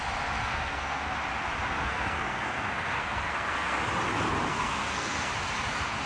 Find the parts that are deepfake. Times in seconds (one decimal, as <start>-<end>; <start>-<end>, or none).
0.4-1.0; 1.8-3.8; 4.5-5.3